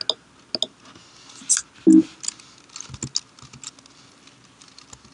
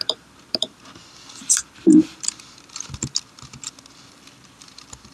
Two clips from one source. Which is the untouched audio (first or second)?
first